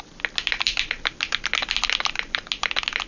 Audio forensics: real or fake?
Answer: real